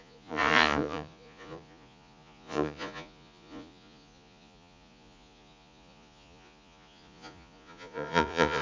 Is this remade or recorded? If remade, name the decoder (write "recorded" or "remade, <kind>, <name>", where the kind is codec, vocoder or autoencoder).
remade, vocoder, Vocos